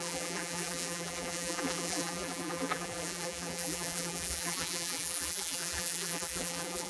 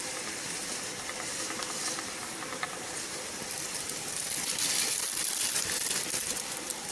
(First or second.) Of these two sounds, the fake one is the first